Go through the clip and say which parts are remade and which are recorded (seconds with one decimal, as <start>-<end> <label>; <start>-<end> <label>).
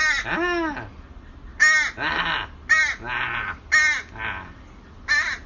0.0-5.5 recorded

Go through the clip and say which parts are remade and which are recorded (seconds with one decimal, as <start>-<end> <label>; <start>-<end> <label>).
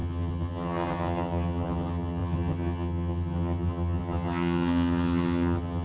0.0-5.8 remade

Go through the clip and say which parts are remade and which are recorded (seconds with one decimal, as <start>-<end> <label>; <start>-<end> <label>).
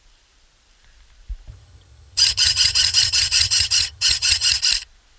0.0-1.5 recorded; 1.5-4.6 remade; 4.6-5.2 recorded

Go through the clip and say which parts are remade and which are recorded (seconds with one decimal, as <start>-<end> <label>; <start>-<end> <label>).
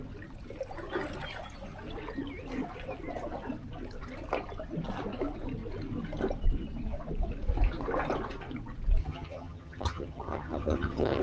0.0-9.0 recorded; 9.0-11.2 remade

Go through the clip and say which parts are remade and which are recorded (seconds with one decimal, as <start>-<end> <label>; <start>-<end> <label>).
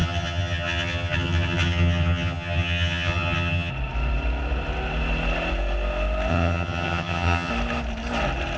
0.0-3.7 remade; 3.7-6.3 recorded; 6.3-7.5 remade; 7.5-8.6 recorded